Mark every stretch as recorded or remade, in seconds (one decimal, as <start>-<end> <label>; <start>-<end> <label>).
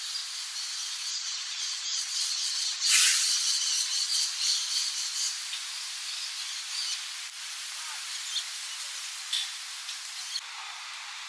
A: 0.0-1.1 recorded; 1.1-4.2 remade; 4.2-11.3 recorded